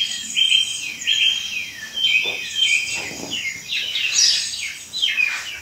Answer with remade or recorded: recorded